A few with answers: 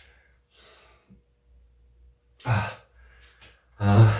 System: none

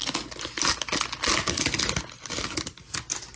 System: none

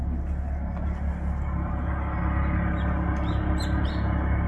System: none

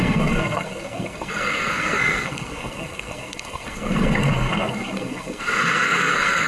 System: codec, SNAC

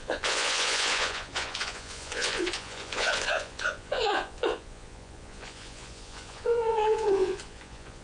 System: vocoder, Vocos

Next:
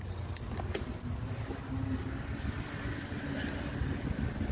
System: none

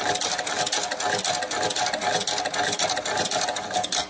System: none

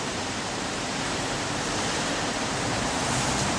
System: vocoder, BigVGAN v2